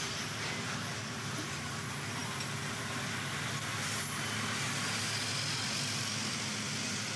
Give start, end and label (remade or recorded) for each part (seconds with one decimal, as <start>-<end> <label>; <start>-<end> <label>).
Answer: 0.0-7.2 recorded